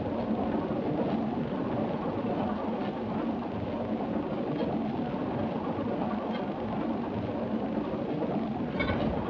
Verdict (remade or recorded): recorded